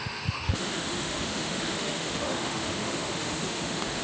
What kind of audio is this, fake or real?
fake